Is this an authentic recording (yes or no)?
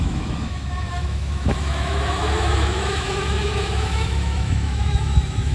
no